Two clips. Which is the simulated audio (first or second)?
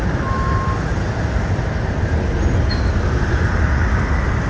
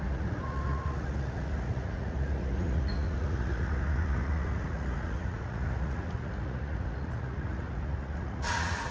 second